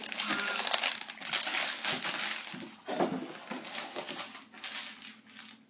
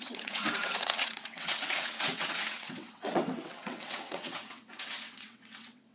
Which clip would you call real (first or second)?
first